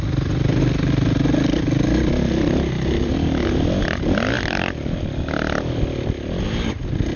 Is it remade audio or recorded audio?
recorded